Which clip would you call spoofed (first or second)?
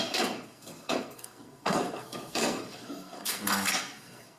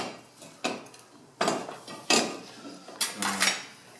first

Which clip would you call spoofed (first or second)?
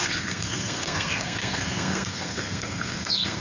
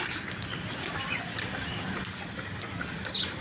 first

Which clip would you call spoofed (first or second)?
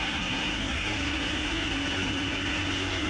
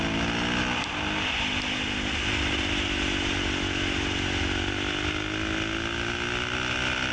first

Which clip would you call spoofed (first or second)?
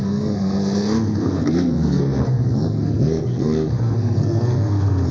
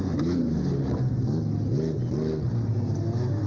first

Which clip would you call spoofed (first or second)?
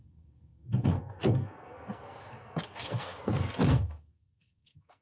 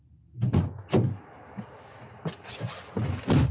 first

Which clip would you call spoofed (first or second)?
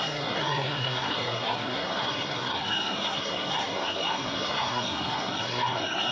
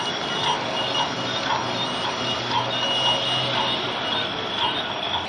first